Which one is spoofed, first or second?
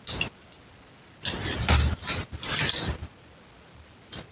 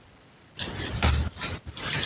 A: second